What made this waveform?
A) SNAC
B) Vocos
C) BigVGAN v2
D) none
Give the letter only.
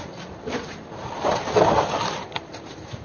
C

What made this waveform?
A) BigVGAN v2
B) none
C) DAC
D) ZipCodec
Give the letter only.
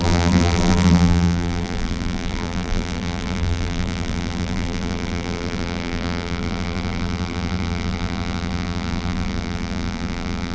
A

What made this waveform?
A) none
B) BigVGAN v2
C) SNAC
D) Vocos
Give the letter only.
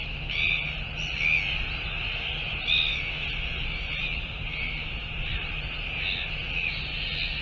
A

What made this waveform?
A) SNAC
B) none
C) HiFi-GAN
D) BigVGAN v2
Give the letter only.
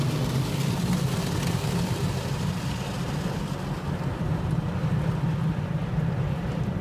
B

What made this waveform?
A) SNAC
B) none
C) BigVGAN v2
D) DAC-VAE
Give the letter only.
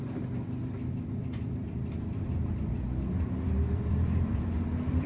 C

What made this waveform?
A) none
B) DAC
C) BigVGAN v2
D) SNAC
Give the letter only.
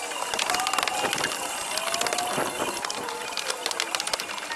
A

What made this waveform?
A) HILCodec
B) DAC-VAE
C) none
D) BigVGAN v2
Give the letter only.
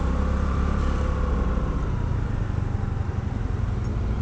C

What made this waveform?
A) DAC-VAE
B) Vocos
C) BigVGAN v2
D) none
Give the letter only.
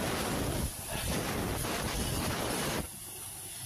D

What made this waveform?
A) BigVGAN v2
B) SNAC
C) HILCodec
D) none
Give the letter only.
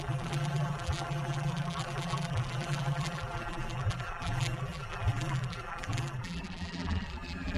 A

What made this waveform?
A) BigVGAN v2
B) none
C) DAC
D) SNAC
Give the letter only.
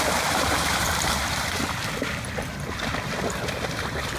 A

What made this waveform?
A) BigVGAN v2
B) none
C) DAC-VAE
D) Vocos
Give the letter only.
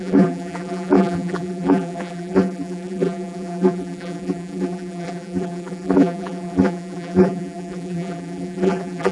A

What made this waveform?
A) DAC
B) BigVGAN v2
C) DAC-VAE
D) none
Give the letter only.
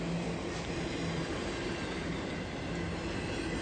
D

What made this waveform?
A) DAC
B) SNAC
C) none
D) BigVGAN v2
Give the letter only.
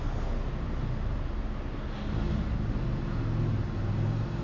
C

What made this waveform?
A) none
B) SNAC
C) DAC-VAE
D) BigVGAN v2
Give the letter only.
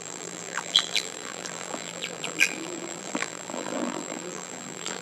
D